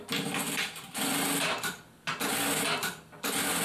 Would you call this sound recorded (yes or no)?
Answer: yes